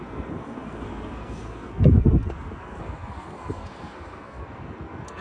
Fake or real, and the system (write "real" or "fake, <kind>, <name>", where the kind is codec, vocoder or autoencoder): fake, codec, SNAC